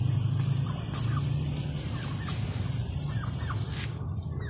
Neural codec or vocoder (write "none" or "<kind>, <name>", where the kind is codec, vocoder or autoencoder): none